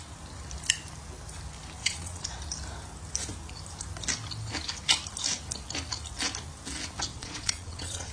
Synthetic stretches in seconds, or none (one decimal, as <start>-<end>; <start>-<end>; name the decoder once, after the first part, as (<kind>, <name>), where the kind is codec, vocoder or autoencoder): 1.8-2.4 (vocoder, Vocos); 7.1-8.1